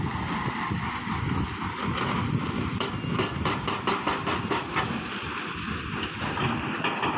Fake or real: real